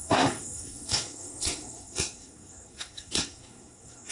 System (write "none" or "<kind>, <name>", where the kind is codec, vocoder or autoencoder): codec, SNAC